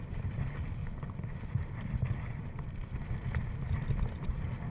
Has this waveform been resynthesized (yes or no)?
no